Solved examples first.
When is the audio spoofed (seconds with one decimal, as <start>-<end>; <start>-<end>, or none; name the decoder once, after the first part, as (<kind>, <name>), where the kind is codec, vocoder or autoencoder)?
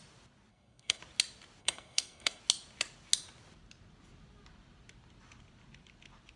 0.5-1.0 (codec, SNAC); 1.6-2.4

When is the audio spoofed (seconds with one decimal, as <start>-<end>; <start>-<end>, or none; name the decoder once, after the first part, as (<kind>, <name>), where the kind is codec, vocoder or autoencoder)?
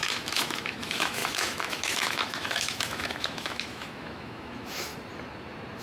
0.0-4.9 (autoencoder, DAC-VAE)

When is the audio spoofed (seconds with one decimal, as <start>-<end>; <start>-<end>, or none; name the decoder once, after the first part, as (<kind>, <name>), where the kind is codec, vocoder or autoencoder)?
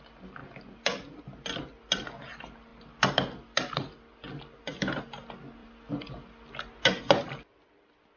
5.6-6.1 (vocoder, BigVGAN v2)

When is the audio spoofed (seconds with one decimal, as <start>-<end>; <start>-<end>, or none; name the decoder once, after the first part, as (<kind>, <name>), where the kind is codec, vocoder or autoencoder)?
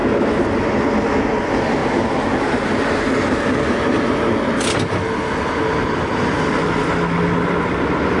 none